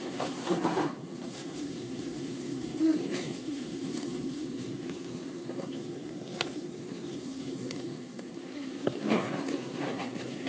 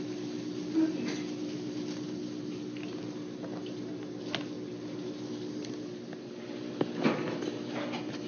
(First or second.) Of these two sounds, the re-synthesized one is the first